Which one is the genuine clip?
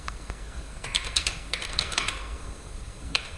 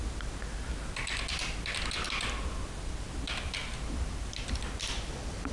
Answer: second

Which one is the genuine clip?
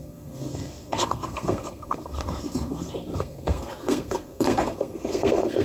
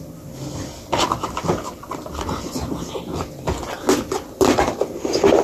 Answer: second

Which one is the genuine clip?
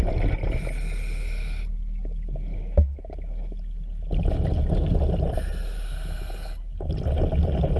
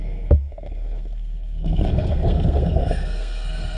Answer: first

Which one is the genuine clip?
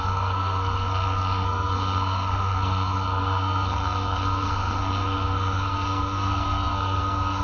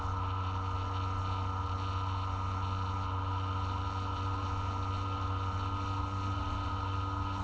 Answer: second